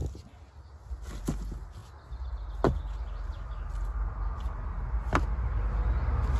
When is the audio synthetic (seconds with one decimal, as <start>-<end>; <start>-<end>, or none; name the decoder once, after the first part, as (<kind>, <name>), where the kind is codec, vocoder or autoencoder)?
none